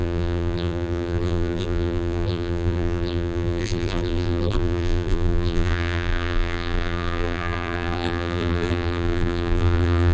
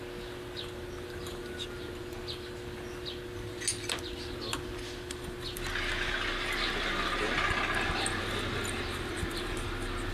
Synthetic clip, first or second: first